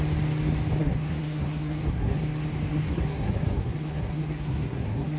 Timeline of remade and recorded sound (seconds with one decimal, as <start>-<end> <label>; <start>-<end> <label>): 0.0-0.8 recorded; 0.8-2.2 remade; 2.2-2.7 recorded; 2.7-5.2 remade